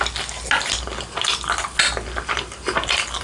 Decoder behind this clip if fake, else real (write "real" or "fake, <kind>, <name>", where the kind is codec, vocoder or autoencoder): real